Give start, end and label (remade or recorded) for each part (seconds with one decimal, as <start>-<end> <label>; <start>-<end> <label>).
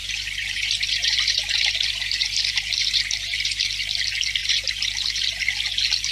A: 0.0-3.7 remade; 3.7-4.4 recorded; 4.4-5.4 remade; 5.4-6.1 recorded